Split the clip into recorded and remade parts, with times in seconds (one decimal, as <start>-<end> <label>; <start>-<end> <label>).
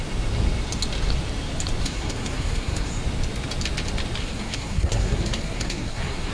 0.0-1.8 recorded; 1.8-2.9 remade; 2.9-4.2 recorded; 4.2-6.3 remade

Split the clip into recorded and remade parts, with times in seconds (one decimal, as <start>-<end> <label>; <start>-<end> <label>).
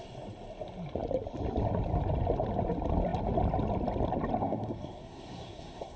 0.0-4.4 recorded; 4.4-6.0 remade